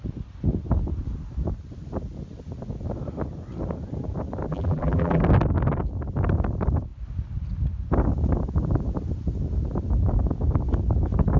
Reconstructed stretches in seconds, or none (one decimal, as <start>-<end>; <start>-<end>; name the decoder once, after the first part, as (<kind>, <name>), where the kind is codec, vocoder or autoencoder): 4.5-5.2 (vocoder, BigVGAN v2)